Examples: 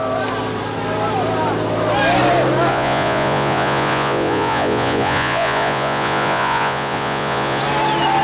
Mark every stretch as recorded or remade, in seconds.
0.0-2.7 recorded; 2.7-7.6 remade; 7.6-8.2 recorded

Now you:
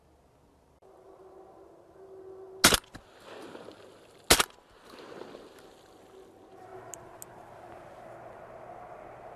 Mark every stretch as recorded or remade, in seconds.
0.0-9.4 recorded

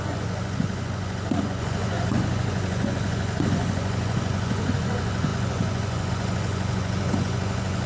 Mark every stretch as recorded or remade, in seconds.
0.0-7.9 remade

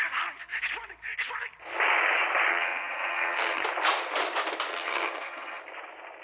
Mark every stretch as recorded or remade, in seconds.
0.0-2.5 recorded; 2.5-3.6 remade; 3.6-4.7 recorded; 4.7-5.6 remade; 5.6-6.2 recorded

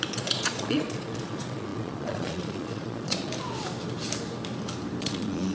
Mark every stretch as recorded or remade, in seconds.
0.0-3.3 remade; 3.3-5.0 recorded; 5.0-5.5 remade

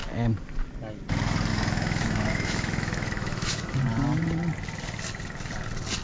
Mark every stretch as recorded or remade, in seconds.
0.0-1.5 recorded; 1.5-3.8 remade; 3.8-6.0 recorded

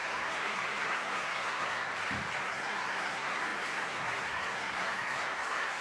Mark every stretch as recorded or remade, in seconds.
0.0-1.9 remade; 1.9-2.4 recorded; 2.4-5.8 remade